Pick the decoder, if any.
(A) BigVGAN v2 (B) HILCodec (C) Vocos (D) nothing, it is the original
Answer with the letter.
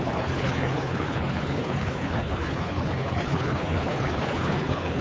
B